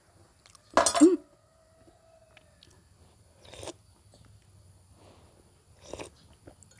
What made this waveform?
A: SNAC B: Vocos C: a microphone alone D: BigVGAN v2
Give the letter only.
C